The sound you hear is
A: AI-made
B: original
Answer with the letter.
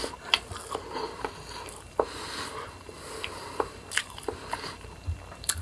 B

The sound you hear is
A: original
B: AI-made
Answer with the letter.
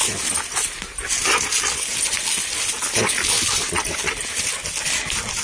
A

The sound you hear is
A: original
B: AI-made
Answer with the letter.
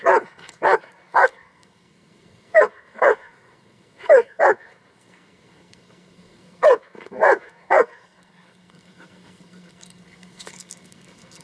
B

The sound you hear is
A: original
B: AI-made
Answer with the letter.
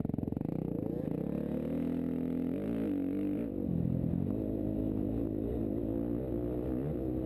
A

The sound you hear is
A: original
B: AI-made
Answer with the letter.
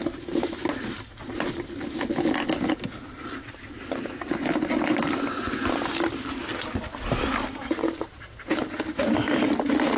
A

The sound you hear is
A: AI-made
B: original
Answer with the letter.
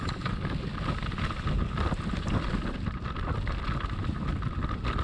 B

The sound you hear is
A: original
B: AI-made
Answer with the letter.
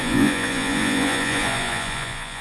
B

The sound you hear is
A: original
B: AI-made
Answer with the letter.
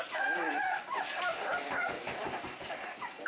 A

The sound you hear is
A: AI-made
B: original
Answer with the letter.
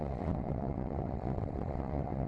A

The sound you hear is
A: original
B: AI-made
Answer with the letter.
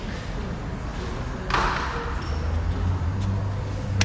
A